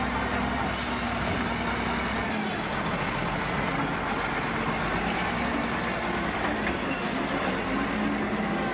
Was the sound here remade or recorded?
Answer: recorded